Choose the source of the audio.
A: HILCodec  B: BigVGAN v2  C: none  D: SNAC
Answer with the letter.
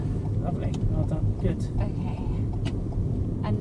B